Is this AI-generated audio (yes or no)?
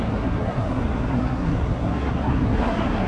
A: yes